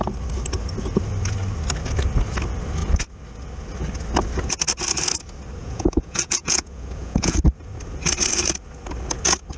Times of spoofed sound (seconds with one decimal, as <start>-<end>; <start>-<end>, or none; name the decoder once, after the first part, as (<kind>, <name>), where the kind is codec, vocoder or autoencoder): 5.6-7.4 (vocoder, Vocos)